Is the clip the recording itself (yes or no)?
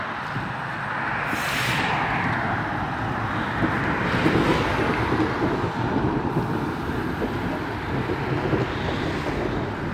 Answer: yes